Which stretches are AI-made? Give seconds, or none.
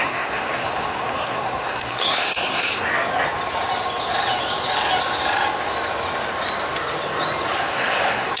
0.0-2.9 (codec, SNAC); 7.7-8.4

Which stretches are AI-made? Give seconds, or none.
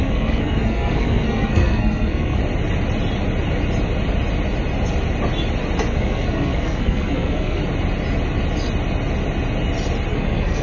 0.0-2.4 (codec, SNAC); 5.9-7.6; 10.1-10.6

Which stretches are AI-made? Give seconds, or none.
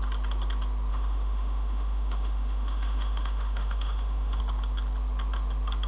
0.9-4.4 (autoencoder, DAC-VAE)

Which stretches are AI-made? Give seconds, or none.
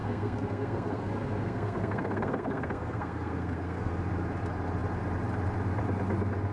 0.0-3.9 (codec, SNAC)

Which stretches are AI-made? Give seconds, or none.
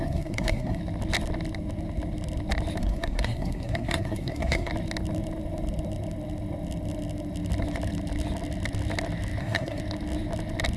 0.0-0.8 (codec, SNAC); 2.8-4.7; 9.4-9.8